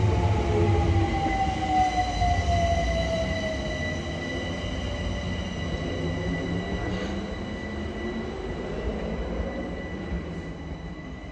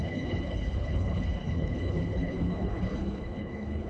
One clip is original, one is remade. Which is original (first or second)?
first